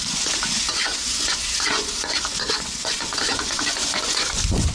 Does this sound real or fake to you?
fake